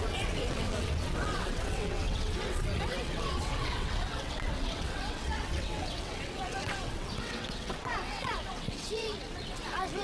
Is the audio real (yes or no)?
no